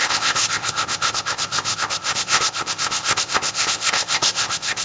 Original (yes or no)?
no